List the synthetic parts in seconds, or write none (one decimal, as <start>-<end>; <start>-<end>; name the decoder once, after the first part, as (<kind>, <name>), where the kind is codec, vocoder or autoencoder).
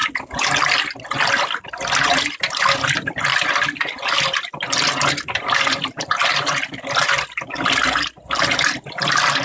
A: none